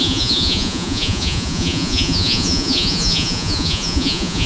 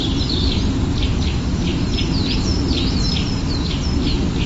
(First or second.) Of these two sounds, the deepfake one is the first